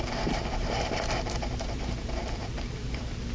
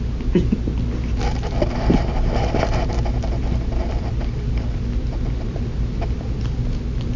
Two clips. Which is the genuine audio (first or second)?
second